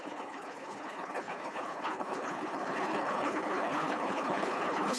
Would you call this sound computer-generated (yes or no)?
yes